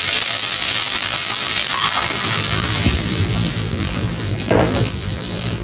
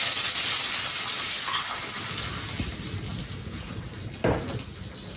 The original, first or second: second